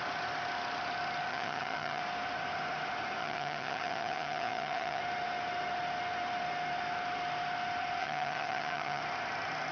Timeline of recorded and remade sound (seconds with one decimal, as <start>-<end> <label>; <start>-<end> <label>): 0.0-1.3 recorded; 1.3-2.0 remade; 2.0-3.2 recorded; 3.2-5.0 remade; 5.0-8.0 recorded; 8.0-9.0 remade; 9.0-9.7 recorded